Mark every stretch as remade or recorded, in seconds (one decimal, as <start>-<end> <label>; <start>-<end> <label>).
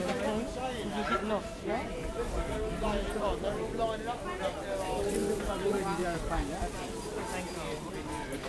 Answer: 0.0-6.0 recorded; 6.0-6.5 remade; 6.5-8.5 recorded